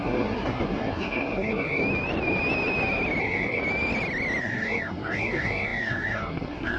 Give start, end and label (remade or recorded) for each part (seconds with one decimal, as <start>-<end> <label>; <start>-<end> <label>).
0.0-1.8 remade; 1.8-3.2 recorded; 3.2-3.6 remade; 3.6-4.4 recorded; 4.4-6.8 remade